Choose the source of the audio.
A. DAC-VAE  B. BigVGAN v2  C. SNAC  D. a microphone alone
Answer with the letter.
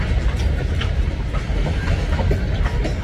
D